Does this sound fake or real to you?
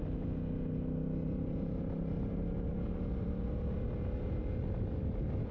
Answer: real